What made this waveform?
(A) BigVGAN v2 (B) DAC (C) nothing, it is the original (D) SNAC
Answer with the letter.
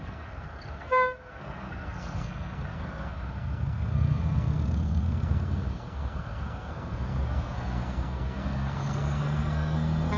D